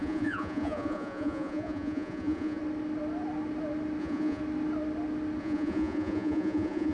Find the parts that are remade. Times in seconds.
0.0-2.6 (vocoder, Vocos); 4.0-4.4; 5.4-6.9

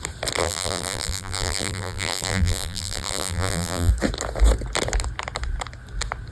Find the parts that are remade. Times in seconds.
0.4-3.9 (vocoder, BigVGAN v2)

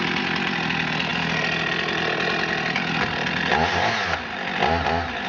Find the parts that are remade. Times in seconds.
none

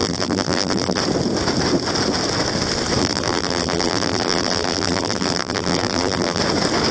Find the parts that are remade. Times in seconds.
0.0-1.0 (vocoder, BigVGAN v2); 3.0-6.4

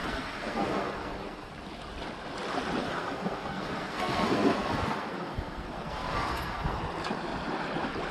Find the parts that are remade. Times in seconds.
0.0-1.5 (codec, SNAC); 2.8-6.8

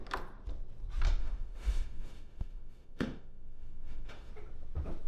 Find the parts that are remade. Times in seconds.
1.2-4.3 (autoencoder, DAC-VAE)

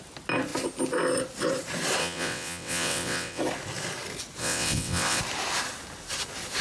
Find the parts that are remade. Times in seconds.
2.0-3.4 (vocoder, WaveNeXt); 4.4-5.2